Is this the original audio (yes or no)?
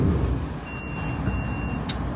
yes